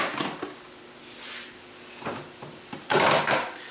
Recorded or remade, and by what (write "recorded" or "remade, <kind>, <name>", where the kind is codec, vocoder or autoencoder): recorded